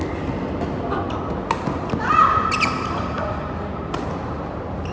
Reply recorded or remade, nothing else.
recorded